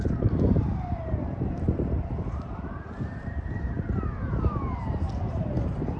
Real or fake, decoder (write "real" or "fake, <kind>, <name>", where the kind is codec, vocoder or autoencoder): fake, vocoder, BigVGAN v2